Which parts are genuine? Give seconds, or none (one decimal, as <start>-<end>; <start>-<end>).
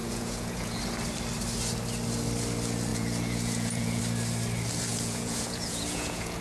0.8-2.9; 4.0-4.9